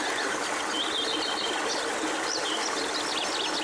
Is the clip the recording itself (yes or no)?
yes